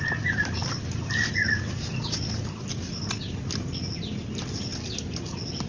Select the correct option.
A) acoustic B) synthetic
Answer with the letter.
A